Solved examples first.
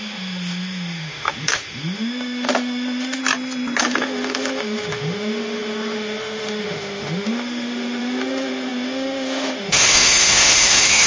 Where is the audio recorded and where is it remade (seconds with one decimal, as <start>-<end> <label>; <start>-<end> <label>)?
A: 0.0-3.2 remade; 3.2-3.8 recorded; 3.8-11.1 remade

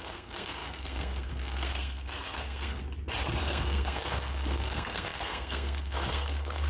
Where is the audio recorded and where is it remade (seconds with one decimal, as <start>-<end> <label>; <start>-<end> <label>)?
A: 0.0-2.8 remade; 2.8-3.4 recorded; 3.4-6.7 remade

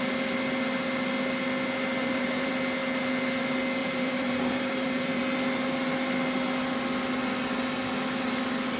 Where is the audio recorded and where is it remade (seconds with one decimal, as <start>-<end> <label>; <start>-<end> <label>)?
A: 0.0-2.0 recorded; 2.0-2.5 remade; 2.5-3.8 recorded; 3.8-5.2 remade; 5.2-8.8 recorded

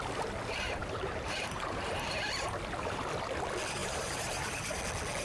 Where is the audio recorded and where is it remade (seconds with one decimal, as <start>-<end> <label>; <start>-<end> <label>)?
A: 0.0-0.8 recorded; 0.8-2.6 remade; 2.6-3.8 recorded; 3.8-4.8 remade; 4.8-5.2 recorded

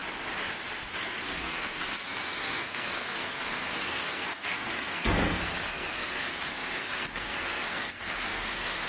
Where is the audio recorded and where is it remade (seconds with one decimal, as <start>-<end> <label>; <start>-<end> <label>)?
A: 0.0-1.0 recorded; 1.0-8.9 remade